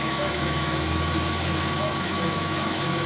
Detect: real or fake fake